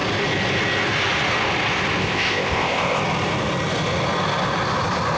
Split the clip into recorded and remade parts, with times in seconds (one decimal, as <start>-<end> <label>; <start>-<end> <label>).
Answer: 0.0-2.0 recorded; 2.0-3.0 remade; 3.0-5.2 recorded